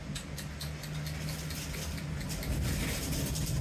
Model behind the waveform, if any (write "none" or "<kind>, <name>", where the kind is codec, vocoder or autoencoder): none